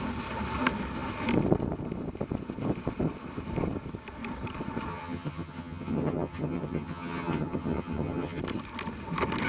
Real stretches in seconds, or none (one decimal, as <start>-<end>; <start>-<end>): 0.0-4.9; 8.4-9.5